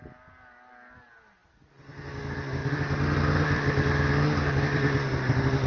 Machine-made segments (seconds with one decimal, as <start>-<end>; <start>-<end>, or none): none

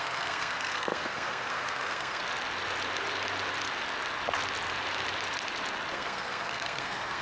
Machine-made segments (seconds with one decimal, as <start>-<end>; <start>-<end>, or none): 0.0-2.2; 5.9-7.2

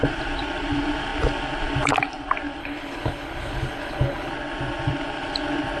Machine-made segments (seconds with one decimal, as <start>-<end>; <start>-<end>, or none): 2.6-4.3